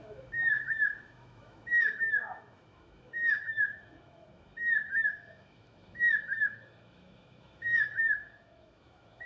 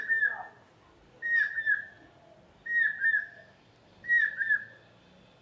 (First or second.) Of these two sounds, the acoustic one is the second